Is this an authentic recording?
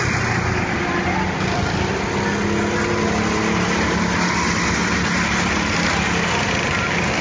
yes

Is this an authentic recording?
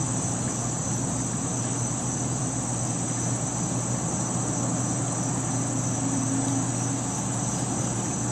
yes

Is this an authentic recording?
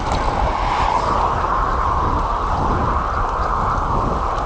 yes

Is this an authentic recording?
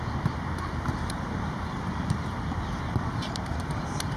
no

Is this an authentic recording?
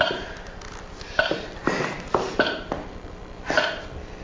yes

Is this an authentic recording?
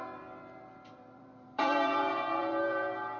no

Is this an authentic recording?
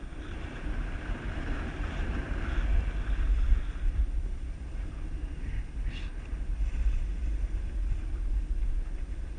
yes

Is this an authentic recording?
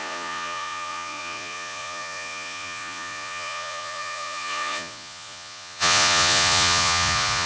no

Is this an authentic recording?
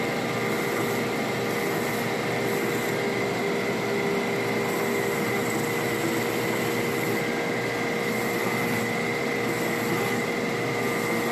yes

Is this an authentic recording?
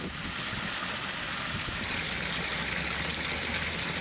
yes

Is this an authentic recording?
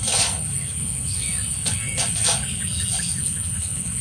no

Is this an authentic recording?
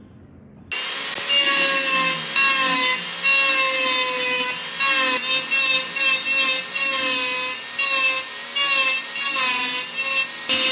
yes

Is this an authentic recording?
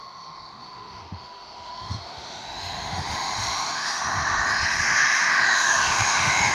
no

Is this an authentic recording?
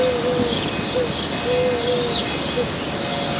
yes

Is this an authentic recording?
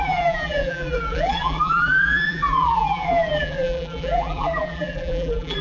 no